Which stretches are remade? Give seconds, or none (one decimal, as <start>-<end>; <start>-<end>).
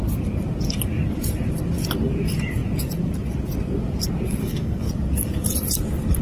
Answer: 4.4-4.9